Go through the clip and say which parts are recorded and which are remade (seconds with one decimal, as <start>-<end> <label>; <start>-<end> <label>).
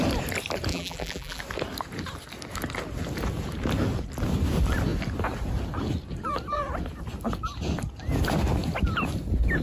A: 0.0-0.7 recorded; 0.7-1.4 remade; 1.4-9.6 recorded